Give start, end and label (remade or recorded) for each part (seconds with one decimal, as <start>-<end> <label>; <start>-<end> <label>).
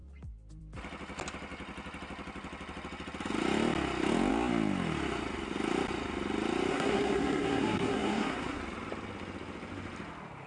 0.0-6.7 recorded; 6.7-8.6 remade; 8.6-10.5 recorded